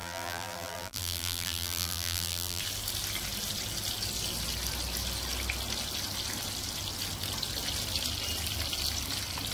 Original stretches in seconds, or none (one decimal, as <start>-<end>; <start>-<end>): 2.6-9.5